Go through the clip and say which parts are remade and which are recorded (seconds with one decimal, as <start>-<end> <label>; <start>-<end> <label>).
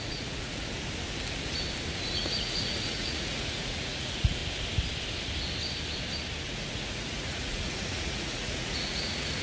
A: 0.0-0.6 remade; 0.6-2.1 recorded; 2.1-4.4 remade; 4.4-6.4 recorded; 6.4-9.4 remade